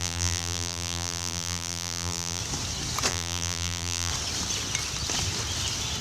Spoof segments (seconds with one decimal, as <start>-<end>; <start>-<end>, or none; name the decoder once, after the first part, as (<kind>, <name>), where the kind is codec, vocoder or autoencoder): 0.0-2.4 (vocoder, BigVGAN v2); 3.1-4.1